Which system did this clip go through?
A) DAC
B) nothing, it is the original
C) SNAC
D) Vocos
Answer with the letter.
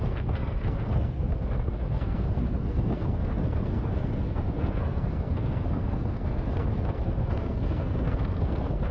C